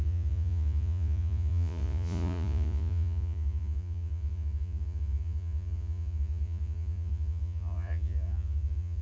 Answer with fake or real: fake